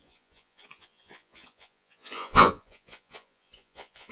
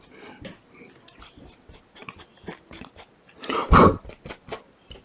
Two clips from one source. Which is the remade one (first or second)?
first